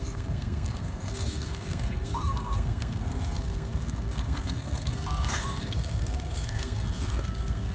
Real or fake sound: fake